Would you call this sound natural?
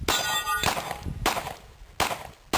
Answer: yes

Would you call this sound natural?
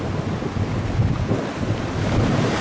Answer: yes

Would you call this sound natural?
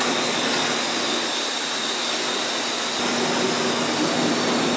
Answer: yes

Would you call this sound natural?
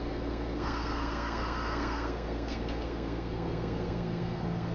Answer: no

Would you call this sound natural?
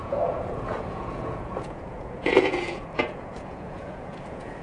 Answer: no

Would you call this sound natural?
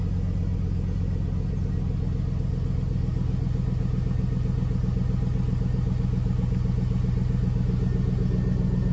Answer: yes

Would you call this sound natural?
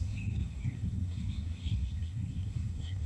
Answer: no